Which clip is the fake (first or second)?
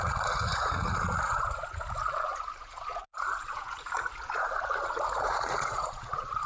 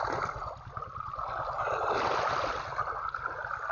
first